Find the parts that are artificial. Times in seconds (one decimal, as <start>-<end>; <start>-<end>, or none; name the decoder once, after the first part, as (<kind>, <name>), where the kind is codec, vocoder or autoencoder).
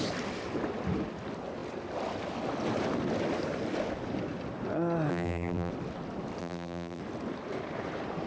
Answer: 5.1-5.7 (vocoder, BigVGAN v2); 6.4-7.0